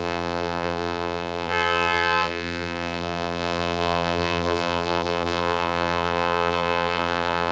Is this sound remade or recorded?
remade